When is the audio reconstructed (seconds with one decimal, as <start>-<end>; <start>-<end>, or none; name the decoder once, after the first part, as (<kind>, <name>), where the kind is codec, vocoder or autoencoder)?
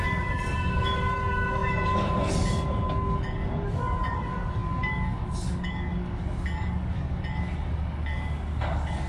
0.0-9.1 (codec, DAC)